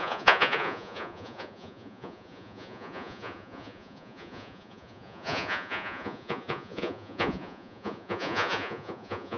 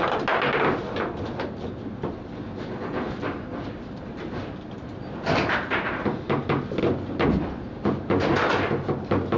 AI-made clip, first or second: first